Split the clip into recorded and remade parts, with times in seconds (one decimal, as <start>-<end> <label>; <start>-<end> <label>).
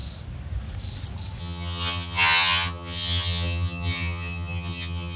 0.0-1.4 recorded; 1.4-5.2 remade